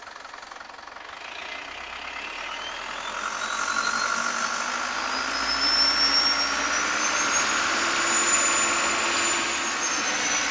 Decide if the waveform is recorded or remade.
recorded